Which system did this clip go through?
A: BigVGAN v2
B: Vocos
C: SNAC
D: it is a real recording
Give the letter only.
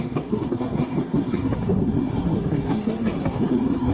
C